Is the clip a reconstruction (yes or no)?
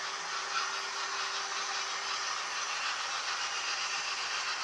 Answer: no